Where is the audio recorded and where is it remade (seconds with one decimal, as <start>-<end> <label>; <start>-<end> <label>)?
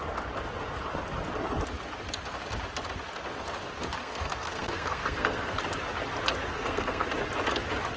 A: 0.0-4.0 recorded; 4.0-5.6 remade; 5.6-6.5 recorded; 6.5-7.1 remade; 7.1-8.0 recorded